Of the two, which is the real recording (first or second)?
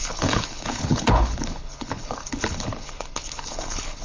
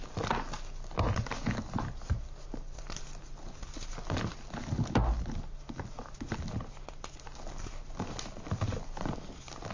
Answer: second